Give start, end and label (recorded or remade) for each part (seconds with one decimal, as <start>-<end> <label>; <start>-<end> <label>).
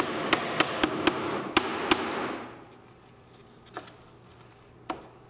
0.0-5.3 recorded